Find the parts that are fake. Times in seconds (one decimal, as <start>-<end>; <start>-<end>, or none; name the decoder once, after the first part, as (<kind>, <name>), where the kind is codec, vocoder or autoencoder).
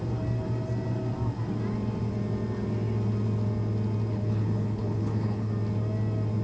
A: 4.1-5.5 (codec, HILCodec)